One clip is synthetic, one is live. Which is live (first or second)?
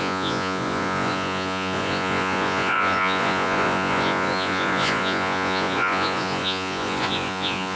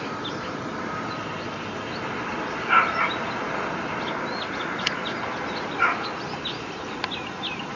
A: second